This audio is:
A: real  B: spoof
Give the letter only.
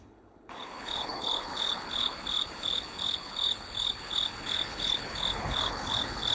B